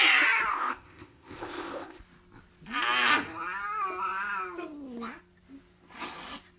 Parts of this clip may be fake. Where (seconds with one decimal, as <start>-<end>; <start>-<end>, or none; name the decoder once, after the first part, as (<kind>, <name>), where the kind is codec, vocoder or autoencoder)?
0.5-2.0 (codec, ZipCodec)